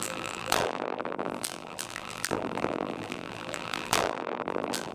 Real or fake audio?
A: fake